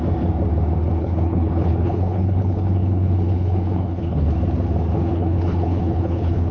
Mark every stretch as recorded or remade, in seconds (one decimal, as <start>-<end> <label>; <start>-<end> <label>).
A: 0.0-1.0 recorded; 1.0-4.3 remade; 4.3-4.9 recorded; 4.9-6.5 remade

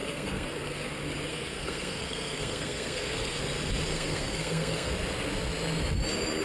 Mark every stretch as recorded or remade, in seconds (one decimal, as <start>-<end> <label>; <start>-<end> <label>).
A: 0.0-0.9 remade; 0.9-1.3 recorded; 1.3-3.4 remade; 3.4-3.9 recorded; 3.9-4.9 remade; 4.9-6.4 recorded

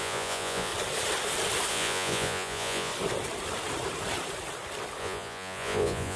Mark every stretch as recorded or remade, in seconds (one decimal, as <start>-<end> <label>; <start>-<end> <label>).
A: 0.0-0.7 remade; 0.7-1.7 recorded; 1.7-2.9 remade; 2.9-5.0 recorded; 5.0-6.2 remade

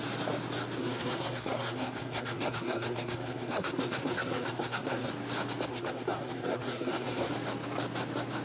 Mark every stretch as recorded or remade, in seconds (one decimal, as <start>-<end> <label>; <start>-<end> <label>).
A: 0.0-0.8 recorded; 0.8-5.1 remade; 5.1-5.7 recorded; 5.7-7.3 remade; 7.3-8.4 recorded

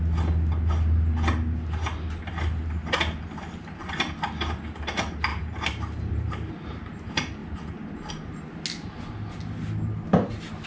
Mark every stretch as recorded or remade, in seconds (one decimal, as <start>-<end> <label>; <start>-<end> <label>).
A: 0.0-5.3 recorded; 5.3-6.5 remade; 6.5-10.7 recorded

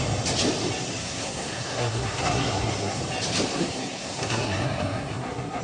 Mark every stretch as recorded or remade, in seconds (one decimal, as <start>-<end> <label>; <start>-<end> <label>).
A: 0.0-1.0 recorded; 1.0-3.0 remade; 3.0-3.5 recorded; 3.5-5.6 remade

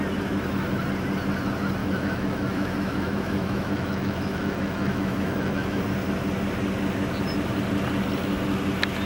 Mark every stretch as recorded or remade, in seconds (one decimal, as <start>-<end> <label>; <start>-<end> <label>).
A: 0.0-1.8 recorded; 1.8-5.8 remade; 5.8-9.1 recorded

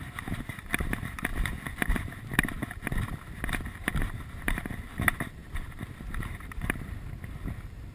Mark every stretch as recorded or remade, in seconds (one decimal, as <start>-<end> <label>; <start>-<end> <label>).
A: 0.0-1.3 remade; 1.3-1.9 recorded; 1.9-2.6 remade; 2.6-3.6 recorded; 3.6-7.9 remade